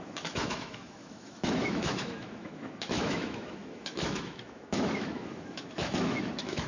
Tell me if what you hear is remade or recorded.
remade